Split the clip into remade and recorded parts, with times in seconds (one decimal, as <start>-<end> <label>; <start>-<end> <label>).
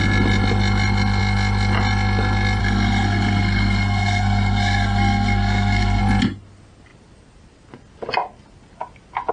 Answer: 0.0-2.6 recorded; 2.6-6.0 remade; 6.0-9.3 recorded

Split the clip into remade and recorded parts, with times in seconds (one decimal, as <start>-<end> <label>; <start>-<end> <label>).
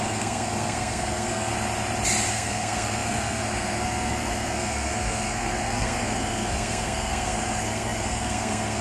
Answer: 0.0-1.5 remade; 1.5-2.3 recorded; 2.3-8.8 remade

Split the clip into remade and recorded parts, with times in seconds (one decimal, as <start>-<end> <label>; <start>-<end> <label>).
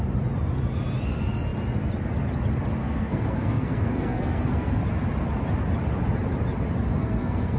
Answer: 0.0-2.8 recorded; 2.8-4.8 remade; 4.8-7.0 recorded; 7.0-7.6 remade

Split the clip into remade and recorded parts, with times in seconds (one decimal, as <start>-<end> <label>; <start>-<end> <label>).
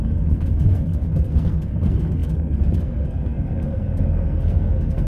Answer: 0.0-5.1 remade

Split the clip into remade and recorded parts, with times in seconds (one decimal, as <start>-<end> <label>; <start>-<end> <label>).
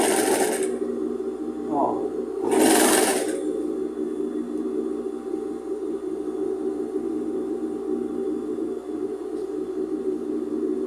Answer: 0.0-10.9 recorded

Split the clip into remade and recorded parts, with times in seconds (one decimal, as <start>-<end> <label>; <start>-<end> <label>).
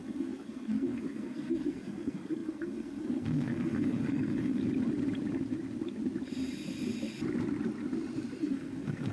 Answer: 0.0-4.6 remade; 4.6-8.4 recorded; 8.4-9.1 remade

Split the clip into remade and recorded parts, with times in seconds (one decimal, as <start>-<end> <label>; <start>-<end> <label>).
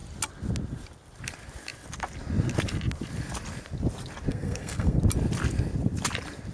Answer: 0.0-4.3 recorded; 4.3-5.0 remade; 5.0-6.5 recorded